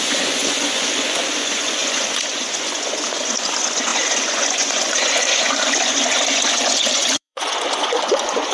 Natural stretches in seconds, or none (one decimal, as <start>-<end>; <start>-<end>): none